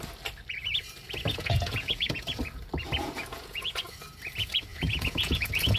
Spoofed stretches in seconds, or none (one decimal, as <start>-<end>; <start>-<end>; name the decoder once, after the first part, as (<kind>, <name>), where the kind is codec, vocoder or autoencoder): 1.3-2.4 (vocoder, Vocos); 3.3-3.8; 4.7-5.8